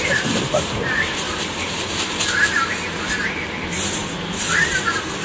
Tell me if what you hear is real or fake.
fake